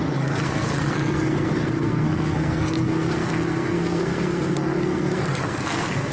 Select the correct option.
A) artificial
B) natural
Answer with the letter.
A